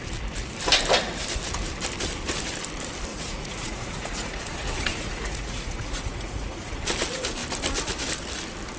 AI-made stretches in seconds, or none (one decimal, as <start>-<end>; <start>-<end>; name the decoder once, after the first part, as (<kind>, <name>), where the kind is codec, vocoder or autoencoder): 3.1-6.8 (vocoder, Vocos)